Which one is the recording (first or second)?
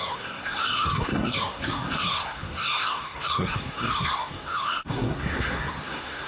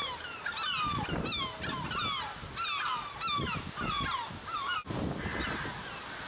second